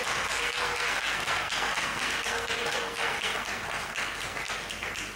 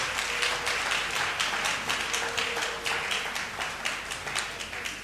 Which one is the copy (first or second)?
first